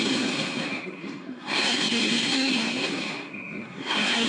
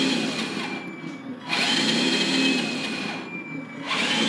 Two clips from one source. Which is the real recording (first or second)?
second